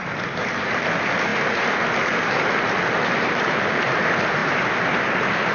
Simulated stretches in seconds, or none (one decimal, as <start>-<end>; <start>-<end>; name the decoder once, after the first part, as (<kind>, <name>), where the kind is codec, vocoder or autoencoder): 4.4-5.5 (vocoder, BigVGAN v2)